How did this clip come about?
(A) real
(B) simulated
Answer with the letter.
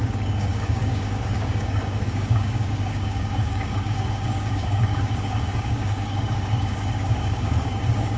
B